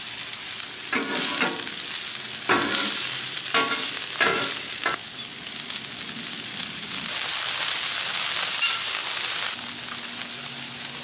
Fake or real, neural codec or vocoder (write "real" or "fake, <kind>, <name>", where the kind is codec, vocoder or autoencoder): real